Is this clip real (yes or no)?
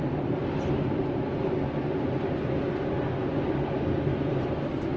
yes